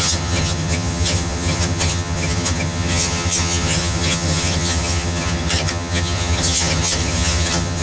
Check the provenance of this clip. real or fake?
fake